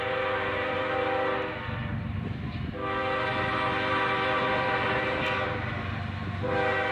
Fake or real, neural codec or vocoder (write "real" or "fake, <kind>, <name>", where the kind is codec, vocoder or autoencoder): real